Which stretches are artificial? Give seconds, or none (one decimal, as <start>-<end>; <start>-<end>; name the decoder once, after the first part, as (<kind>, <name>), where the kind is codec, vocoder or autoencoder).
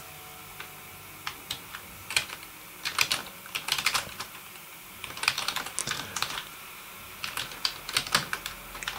5.8-6.7 (vocoder, BigVGAN v2)